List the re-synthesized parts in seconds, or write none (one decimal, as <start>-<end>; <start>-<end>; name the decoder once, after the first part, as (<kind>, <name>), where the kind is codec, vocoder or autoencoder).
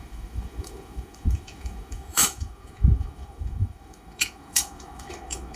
0.0-5.6 (autoencoder, DAC-VAE)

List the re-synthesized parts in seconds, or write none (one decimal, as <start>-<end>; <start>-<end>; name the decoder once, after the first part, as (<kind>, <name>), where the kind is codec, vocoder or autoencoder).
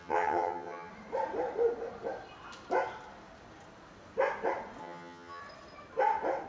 0.0-0.9 (vocoder, HiFi-GAN); 4.8-5.4